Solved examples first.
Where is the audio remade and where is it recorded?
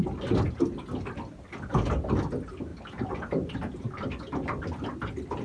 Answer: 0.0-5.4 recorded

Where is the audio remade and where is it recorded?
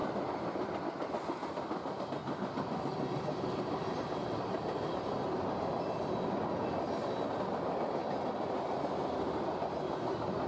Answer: 0.0-10.5 recorded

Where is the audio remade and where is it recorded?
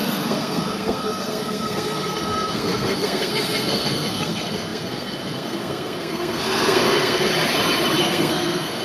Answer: 0.0-7.3 remade; 7.3-8.0 recorded; 8.0-8.8 remade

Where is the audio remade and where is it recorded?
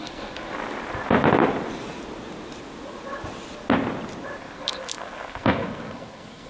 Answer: 0.0-0.5 remade; 0.5-4.4 recorded; 4.4-6.5 remade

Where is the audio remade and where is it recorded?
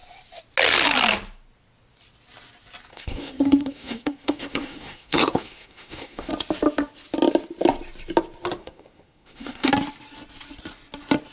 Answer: 0.0-2.9 recorded; 2.9-6.3 remade; 6.3-8.6 recorded; 8.6-9.7 remade; 9.7-11.3 recorded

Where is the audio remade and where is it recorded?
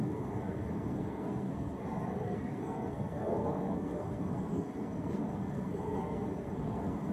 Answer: 0.0-7.1 remade